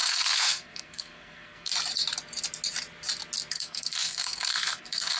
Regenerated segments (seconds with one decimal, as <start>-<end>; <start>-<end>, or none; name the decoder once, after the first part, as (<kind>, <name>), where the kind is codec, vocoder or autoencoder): 0.0-1.7 (codec, SNAC); 3.5-5.2